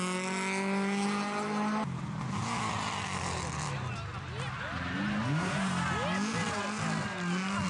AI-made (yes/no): no